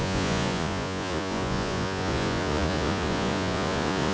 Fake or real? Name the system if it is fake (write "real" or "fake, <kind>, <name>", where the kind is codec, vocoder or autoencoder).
fake, vocoder, Vocos